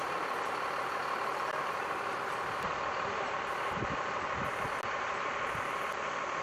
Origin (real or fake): real